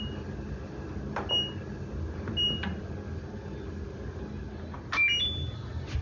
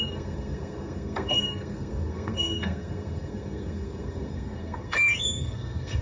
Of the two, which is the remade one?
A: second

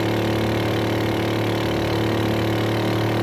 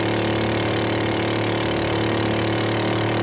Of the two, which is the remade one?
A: second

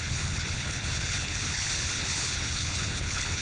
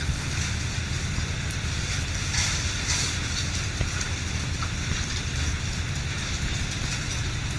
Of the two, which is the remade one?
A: first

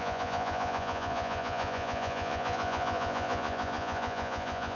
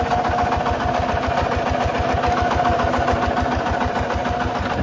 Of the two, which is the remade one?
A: first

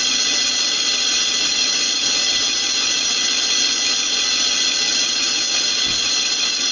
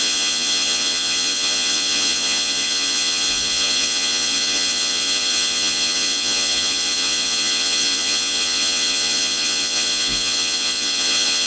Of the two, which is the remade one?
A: second